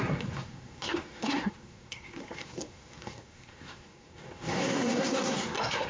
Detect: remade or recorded remade